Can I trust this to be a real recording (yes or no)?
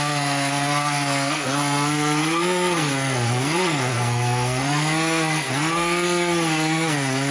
no